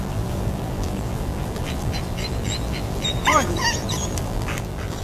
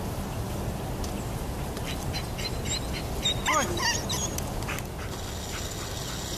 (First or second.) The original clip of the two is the second